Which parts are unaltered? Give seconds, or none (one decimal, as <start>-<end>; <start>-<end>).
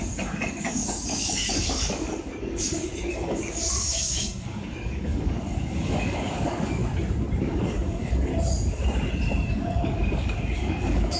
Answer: 6.8-7.4; 8.3-9.5